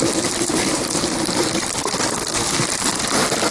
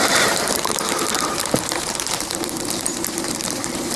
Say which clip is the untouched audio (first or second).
first